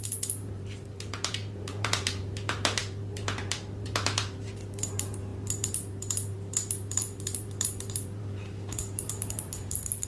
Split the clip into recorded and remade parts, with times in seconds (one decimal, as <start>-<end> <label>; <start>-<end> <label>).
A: 0.0-10.1 remade